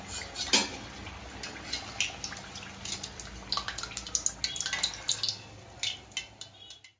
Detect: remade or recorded recorded